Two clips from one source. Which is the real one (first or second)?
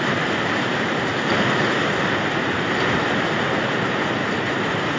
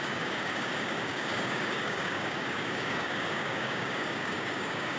first